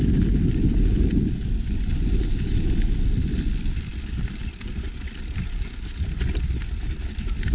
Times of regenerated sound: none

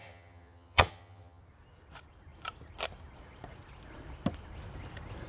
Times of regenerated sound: 0.0-1.4 (vocoder, HiFi-GAN)

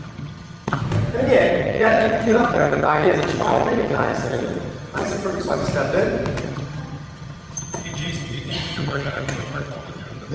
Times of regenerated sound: 0.0-0.8 (vocoder, HiFi-GAN); 1.6-5.6; 6.4-10.3